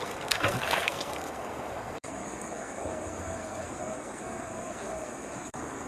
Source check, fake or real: fake